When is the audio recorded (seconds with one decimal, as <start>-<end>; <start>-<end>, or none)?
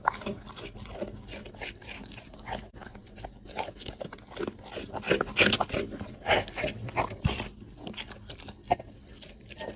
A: 0.0-9.8